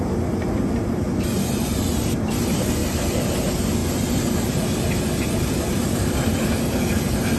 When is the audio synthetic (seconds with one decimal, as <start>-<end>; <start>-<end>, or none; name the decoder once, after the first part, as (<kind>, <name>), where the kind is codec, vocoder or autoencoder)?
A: none

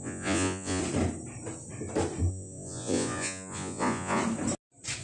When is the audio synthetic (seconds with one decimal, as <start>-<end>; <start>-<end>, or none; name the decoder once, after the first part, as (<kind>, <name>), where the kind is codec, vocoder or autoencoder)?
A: 0.0-0.8 (vocoder, Vocos); 2.3-4.2